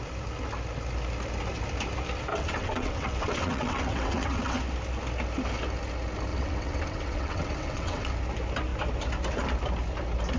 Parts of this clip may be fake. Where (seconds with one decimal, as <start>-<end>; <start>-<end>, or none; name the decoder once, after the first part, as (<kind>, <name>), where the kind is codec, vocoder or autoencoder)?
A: 2.3-4.6 (vocoder, WaveNeXt); 6.3-8.1